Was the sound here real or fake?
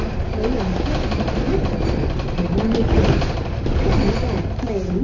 real